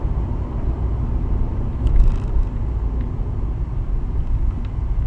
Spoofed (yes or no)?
no